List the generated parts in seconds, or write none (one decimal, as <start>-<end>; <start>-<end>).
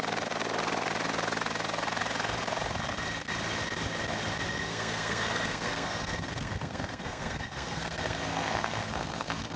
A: 4.5-9.6